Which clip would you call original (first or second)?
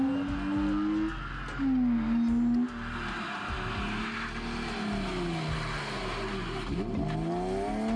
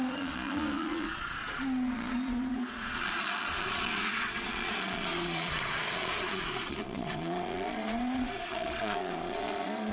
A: first